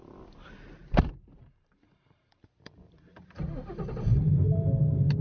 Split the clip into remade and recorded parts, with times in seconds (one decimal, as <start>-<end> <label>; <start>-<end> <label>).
0.0-0.8 recorded; 0.8-3.4 remade; 3.4-4.1 recorded; 4.1-4.8 remade; 4.8-5.2 recorded